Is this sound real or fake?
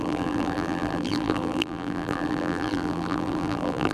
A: fake